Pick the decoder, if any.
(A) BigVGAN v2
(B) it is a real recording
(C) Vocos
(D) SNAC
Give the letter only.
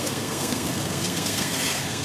D